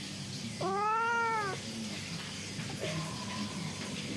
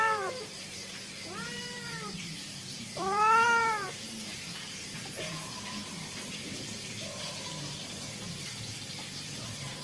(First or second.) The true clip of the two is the first